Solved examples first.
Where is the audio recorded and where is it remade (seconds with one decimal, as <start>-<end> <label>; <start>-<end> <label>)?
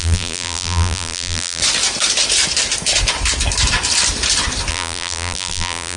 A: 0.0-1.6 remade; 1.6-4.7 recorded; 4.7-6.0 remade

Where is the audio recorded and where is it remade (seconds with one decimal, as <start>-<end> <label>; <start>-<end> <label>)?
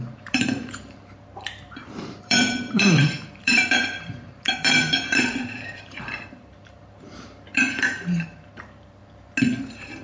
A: 0.0-9.0 remade; 9.0-9.6 recorded; 9.6-10.0 remade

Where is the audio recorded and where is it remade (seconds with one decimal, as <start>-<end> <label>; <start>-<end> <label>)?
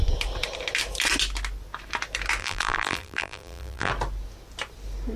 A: 0.0-2.4 recorded; 2.4-3.9 remade; 3.9-5.2 recorded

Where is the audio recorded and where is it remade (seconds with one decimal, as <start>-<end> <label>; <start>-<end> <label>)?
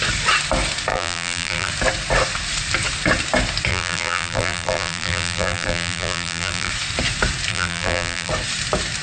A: 0.0-0.9 recorded; 0.9-1.7 remade; 1.7-3.7 recorded; 3.7-6.7 remade; 6.7-7.5 recorded; 7.5-8.3 remade; 8.3-9.0 recorded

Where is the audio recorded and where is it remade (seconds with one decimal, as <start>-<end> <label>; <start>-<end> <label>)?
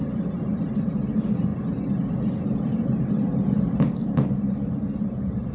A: 0.0-1.5 remade; 1.5-2.4 recorded; 2.4-5.5 remade